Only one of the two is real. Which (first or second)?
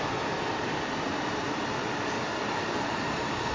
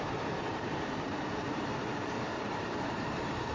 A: first